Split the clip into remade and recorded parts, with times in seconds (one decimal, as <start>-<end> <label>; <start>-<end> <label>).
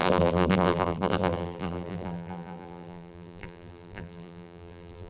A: 0.0-5.1 remade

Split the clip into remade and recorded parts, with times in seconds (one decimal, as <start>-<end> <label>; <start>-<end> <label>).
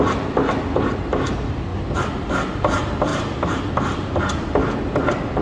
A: 0.0-3.1 recorded; 3.1-3.7 remade; 3.7-5.4 recorded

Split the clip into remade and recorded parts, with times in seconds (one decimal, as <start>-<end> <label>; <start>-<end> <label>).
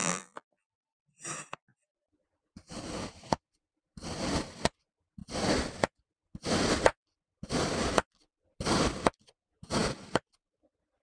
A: 0.0-0.7 remade; 0.7-11.0 recorded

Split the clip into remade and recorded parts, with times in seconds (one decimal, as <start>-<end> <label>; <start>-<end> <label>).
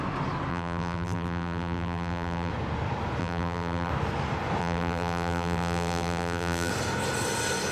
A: 0.0-0.5 recorded; 0.5-2.5 remade; 2.5-3.2 recorded; 3.2-3.9 remade; 3.9-4.6 recorded; 4.6-6.7 remade; 6.7-7.7 recorded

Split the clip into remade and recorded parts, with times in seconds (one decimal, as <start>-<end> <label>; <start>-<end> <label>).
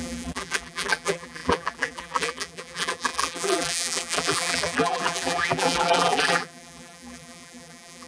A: 0.0-8.1 remade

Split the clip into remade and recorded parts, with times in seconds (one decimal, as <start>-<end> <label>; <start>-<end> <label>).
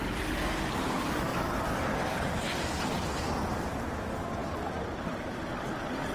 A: 0.0-1.3 recorded; 1.3-1.9 remade; 1.9-3.1 recorded; 3.1-3.7 remade; 3.7-4.4 recorded; 4.4-5.0 remade; 5.0-6.1 recorded